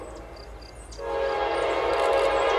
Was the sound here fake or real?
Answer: real